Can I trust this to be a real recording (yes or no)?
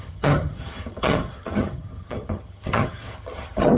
no